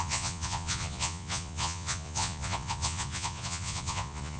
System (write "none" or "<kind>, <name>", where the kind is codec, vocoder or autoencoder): vocoder, Vocos